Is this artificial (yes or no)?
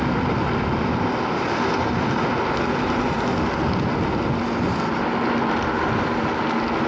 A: no